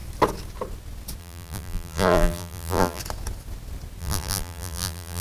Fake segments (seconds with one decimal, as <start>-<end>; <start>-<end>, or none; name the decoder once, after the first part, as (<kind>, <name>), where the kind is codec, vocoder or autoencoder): 1.2-3.0 (vocoder, BigVGAN v2); 4.0-5.2